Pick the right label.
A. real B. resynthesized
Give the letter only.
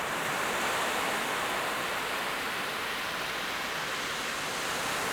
A